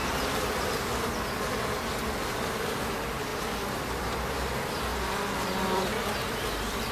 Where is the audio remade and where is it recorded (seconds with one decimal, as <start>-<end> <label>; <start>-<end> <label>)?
0.0-1.5 recorded; 1.5-6.9 remade